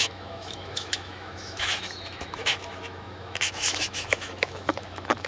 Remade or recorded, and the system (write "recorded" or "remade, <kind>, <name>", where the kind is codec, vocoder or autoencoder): remade, autoencoder, DAC-VAE